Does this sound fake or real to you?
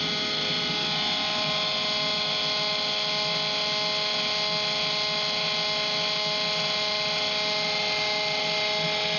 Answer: real